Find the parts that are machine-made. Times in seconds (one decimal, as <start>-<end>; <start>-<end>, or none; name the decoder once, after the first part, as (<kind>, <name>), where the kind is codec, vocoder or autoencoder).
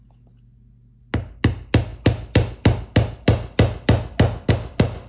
none